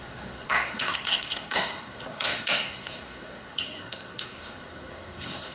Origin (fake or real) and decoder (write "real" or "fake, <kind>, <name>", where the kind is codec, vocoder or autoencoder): fake, codec, SNAC